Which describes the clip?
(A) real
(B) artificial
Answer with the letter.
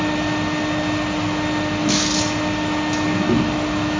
A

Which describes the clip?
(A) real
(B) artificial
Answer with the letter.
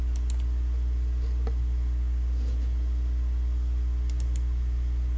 A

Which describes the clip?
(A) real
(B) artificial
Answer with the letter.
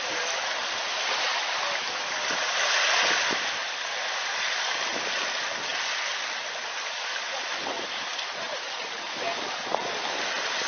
A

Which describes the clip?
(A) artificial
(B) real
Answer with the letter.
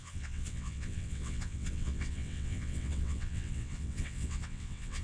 A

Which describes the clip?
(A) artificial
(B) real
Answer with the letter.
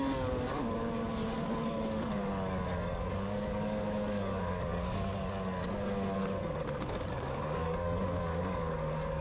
A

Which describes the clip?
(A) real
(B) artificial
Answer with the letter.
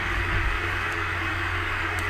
B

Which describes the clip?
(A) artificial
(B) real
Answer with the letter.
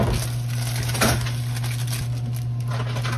B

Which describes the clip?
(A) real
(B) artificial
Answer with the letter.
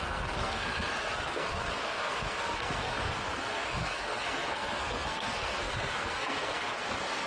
B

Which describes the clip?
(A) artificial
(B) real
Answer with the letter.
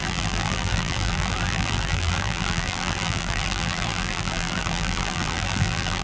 A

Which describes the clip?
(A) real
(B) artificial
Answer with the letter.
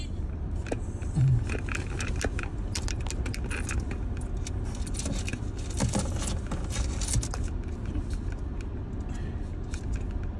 A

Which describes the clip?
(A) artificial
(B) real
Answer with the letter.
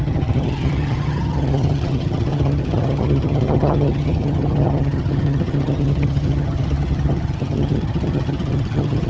A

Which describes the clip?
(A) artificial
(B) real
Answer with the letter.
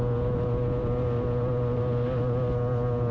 B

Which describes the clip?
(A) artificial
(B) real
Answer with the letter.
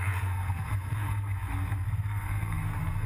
A